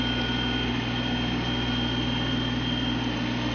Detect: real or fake real